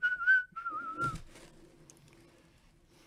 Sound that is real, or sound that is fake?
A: real